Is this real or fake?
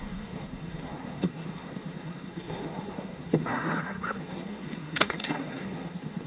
fake